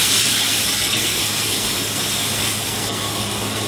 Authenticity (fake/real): fake